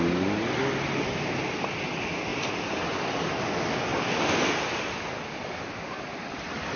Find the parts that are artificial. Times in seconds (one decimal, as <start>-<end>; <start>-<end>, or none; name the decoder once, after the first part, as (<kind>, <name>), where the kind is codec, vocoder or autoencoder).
none